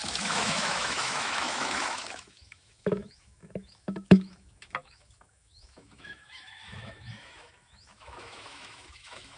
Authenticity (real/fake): fake